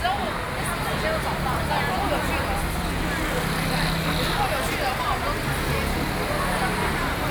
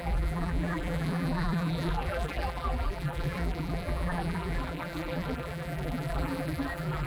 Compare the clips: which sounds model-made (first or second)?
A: second